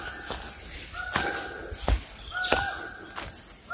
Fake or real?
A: real